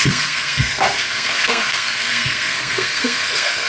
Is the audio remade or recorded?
remade